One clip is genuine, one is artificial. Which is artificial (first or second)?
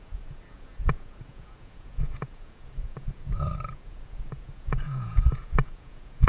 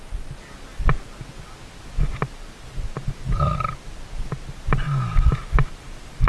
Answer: first